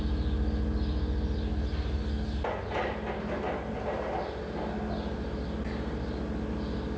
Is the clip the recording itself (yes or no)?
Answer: yes